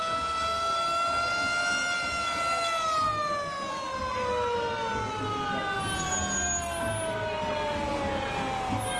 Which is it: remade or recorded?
recorded